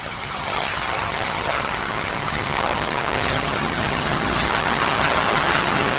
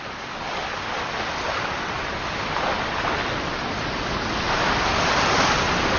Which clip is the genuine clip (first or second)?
second